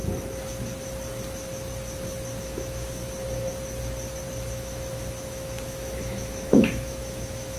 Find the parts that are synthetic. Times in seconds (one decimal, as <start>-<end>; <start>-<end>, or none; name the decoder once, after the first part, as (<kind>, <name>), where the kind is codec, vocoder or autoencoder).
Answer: 2.4-3.0 (autoencoder, DAC-VAE); 4.5-7.6